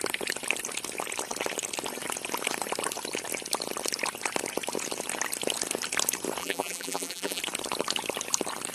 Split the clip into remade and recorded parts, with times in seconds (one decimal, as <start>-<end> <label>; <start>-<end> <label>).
0.0-6.4 recorded; 6.4-7.4 remade; 7.4-8.7 recorded